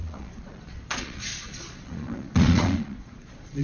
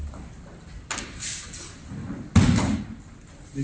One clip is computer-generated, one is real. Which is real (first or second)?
second